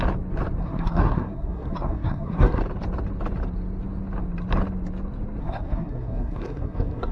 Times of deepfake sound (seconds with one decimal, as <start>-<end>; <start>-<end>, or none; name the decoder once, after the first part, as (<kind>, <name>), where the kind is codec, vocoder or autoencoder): 0.6-2.6 (codec, SNAC); 5.4-7.1